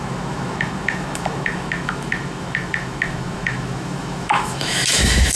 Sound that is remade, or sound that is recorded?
remade